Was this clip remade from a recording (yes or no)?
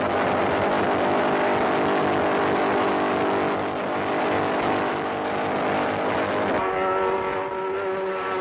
no